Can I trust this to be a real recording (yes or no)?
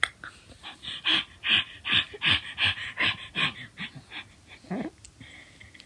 yes